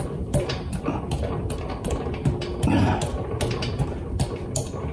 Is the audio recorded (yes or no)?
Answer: yes